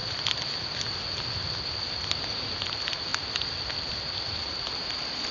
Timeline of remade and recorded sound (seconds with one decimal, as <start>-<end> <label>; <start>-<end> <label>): 0.0-5.3 recorded